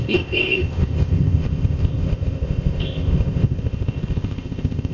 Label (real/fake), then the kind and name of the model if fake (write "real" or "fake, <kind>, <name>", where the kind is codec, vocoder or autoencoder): fake, codec, ZipCodec